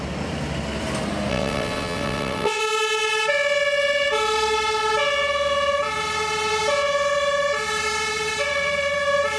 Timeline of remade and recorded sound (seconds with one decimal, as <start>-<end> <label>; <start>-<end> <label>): 0.0-1.3 recorded; 1.3-2.6 remade; 2.6-9.4 recorded